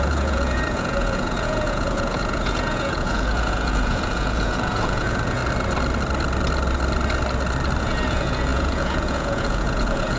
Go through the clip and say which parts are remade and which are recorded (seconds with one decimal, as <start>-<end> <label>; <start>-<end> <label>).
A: 0.0-5.4 remade; 5.4-7.8 recorded; 7.8-10.2 remade